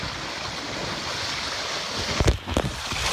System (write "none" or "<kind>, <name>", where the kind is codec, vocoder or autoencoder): none